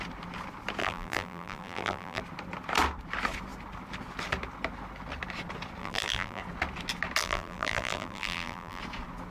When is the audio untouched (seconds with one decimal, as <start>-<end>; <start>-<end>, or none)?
0.0-0.8; 2.2-5.8; 6.4-7.2; 8.8-9.3

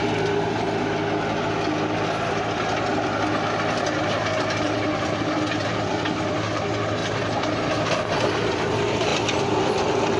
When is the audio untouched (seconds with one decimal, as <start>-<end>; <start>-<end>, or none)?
0.0-4.3; 4.8-5.6; 6.6-10.2

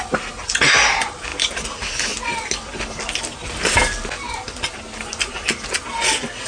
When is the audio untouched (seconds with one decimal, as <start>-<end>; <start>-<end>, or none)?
0.0-6.5

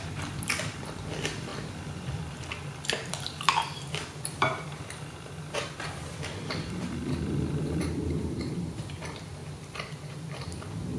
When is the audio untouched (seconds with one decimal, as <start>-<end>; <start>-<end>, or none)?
1.5-2.8; 9.4-11.0

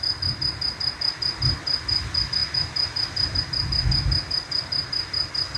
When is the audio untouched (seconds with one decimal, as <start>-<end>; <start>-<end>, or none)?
0.0-5.6